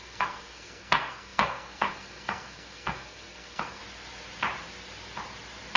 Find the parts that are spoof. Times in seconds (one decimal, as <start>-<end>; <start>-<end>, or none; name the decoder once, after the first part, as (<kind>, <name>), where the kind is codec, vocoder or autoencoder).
0.0-3.8 (codec, SNAC)